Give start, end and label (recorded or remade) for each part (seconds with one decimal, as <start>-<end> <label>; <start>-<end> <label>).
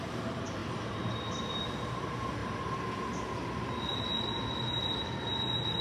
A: 0.0-0.6 remade; 0.6-1.1 recorded; 1.1-2.4 remade; 2.4-4.6 recorded; 4.6-5.8 remade